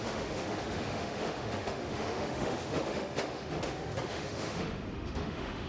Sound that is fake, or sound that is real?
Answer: fake